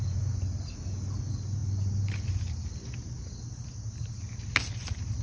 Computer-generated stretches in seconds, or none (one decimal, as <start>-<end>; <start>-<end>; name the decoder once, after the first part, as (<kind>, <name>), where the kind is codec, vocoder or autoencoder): none